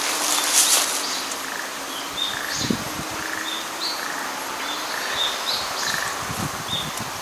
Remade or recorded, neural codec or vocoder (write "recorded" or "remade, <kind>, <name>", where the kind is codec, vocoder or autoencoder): recorded